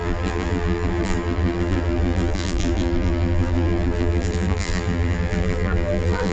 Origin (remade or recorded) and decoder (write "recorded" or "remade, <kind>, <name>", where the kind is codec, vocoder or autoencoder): remade, vocoder, BigVGAN v2